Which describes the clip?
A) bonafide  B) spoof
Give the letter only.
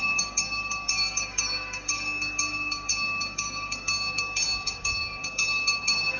B